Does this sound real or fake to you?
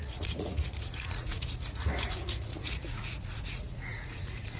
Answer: fake